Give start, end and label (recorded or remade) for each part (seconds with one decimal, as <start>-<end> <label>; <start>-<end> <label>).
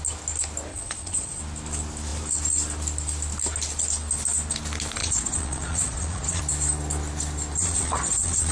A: 0.0-0.7 recorded; 0.7-1.4 remade; 1.4-5.0 recorded; 5.0-6.4 remade; 6.4-7.6 recorded; 7.6-8.5 remade